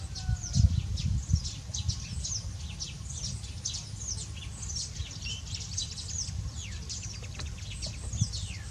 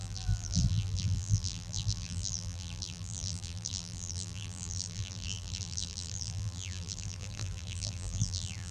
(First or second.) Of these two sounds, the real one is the first